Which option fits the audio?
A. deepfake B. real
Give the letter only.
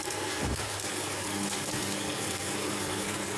A